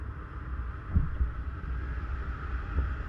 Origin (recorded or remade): recorded